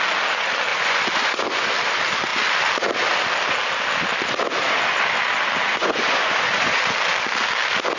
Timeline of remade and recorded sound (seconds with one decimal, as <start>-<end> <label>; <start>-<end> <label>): 0.0-0.7 recorded; 0.7-1.7 remade; 1.7-5.7 recorded; 5.7-6.8 remade; 6.8-8.0 recorded